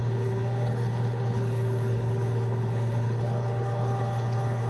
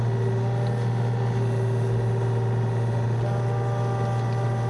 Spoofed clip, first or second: first